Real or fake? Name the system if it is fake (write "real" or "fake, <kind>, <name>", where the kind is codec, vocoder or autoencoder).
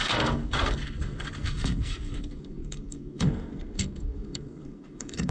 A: fake, codec, SNAC